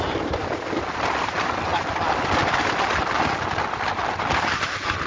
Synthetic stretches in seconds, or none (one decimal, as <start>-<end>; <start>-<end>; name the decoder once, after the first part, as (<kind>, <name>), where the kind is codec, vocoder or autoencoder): none